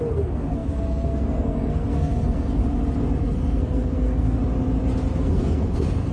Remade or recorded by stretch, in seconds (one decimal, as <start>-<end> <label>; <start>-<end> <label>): 0.0-2.6 remade; 2.6-3.2 recorded; 3.2-4.4 remade; 4.4-5.2 recorded; 5.2-6.1 remade